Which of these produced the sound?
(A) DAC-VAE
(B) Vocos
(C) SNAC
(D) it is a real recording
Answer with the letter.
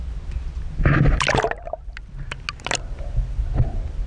D